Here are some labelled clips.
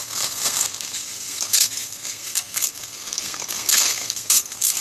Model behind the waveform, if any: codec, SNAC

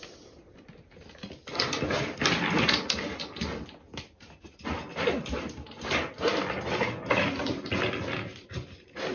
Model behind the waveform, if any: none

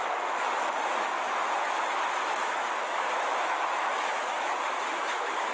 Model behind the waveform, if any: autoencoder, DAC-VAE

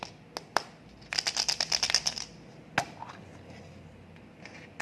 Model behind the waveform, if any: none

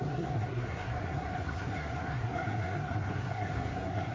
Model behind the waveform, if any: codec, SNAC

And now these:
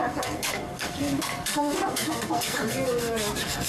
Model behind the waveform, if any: codec, SNAC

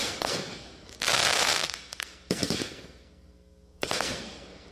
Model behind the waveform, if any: codec, SNAC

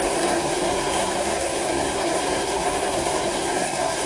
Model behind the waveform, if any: codec, SNAC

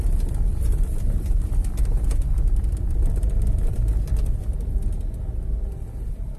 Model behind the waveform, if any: none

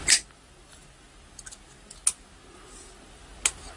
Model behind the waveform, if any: none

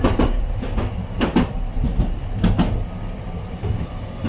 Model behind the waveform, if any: vocoder, BigVGAN v2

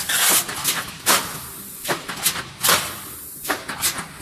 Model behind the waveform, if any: none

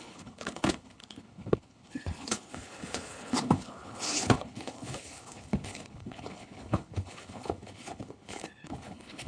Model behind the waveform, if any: codec, HILCodec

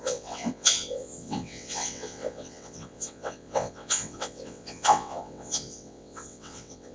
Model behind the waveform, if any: vocoder, WaveNeXt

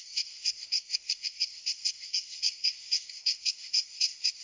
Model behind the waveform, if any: codec, SNAC